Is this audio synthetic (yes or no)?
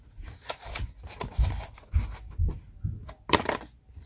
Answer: no